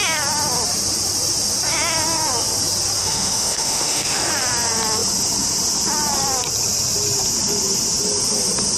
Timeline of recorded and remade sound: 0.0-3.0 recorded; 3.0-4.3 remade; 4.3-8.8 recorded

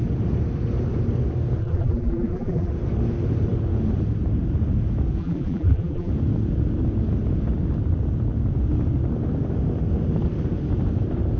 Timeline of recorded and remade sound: 0.0-1.6 recorded; 1.6-2.7 remade; 2.7-5.2 recorded; 5.2-6.1 remade; 6.1-11.4 recorded